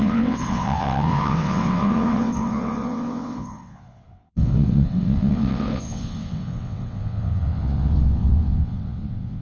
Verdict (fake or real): fake